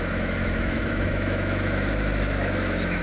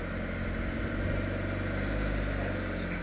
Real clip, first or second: second